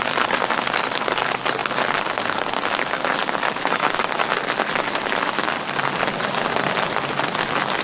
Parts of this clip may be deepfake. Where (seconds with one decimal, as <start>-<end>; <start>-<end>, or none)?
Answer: none